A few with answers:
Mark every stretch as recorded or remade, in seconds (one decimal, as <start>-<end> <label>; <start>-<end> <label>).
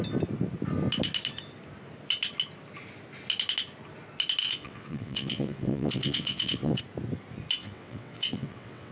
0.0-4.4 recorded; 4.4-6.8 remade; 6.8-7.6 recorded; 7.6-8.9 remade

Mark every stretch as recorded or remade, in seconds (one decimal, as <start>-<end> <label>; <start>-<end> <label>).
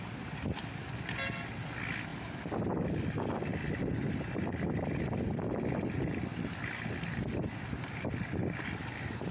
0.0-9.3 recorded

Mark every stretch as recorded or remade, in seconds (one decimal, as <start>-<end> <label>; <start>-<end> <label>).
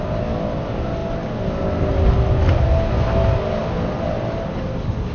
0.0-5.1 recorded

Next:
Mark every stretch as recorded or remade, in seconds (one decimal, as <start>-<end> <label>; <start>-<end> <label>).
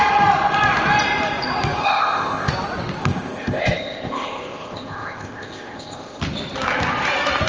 0.0-1.8 recorded; 1.8-2.5 remade; 2.5-3.0 recorded; 3.0-6.2 remade; 6.2-7.5 recorded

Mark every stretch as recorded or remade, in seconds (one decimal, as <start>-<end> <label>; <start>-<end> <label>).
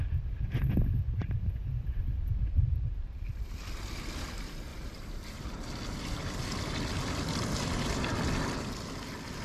0.0-1.2 recorded; 1.2-2.0 remade; 2.0-4.7 recorded; 4.7-5.7 remade; 5.7-9.4 recorded